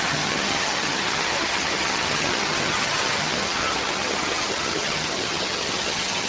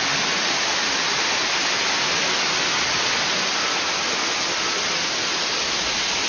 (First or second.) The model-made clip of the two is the first